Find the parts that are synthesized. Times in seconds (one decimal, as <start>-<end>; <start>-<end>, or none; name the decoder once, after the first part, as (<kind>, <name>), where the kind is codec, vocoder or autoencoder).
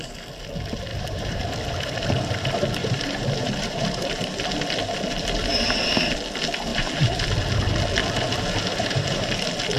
0.9-1.5 (vocoder, BigVGAN v2); 2.8-4.5; 6.7-7.3; 8.7-9.4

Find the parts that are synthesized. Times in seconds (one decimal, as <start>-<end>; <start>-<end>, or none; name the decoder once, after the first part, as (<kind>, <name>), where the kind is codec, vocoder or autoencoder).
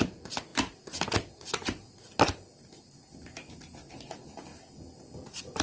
none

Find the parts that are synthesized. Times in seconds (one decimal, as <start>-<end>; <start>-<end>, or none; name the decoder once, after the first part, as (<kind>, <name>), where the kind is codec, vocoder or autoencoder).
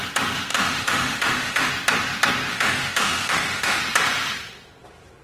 0.5-1.7 (autoencoder, DAC-VAE); 2.5-3.8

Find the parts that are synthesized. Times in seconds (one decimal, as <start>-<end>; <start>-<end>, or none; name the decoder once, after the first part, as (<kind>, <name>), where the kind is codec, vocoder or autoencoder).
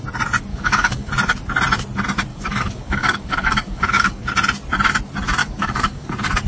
0.5-1.1 (codec, DAC); 2.3-4.3; 5.4-6.1